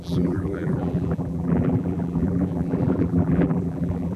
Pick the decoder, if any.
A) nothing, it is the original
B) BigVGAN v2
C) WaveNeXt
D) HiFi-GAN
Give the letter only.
B